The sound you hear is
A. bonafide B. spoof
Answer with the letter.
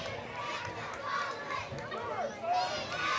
A